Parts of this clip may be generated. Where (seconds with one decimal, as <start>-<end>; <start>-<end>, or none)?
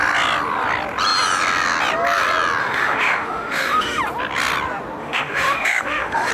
2.6-4.0; 5.0-6.3